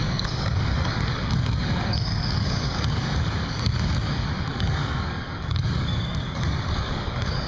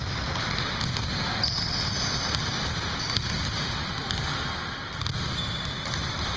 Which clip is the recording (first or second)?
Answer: second